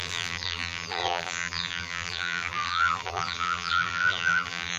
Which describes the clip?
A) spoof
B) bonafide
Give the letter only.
A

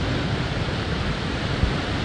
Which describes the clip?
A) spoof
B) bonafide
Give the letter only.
A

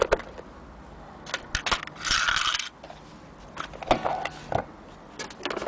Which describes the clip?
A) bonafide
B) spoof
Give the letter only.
A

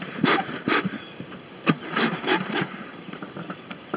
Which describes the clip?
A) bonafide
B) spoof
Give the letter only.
B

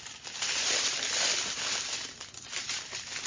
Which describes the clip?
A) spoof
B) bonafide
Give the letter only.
B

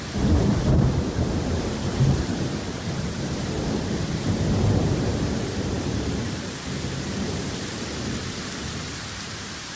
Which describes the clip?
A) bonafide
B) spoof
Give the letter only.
B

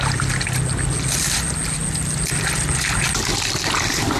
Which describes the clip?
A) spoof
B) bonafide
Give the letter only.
B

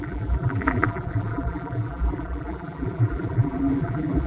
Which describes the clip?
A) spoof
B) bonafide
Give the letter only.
A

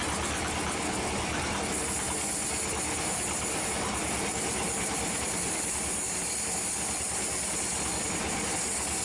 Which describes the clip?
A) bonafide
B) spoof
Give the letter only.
A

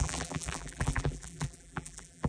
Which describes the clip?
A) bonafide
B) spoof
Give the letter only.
B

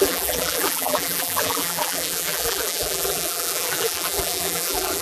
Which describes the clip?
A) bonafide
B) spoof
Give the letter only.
B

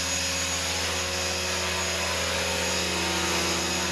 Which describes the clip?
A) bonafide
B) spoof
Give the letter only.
A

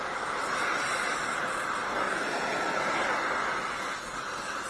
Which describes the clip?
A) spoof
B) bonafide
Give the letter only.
B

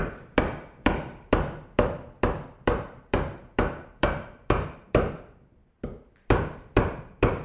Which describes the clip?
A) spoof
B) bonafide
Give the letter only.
A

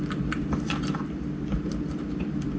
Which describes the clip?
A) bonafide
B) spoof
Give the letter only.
B